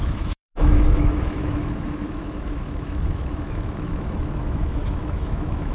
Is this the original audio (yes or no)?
no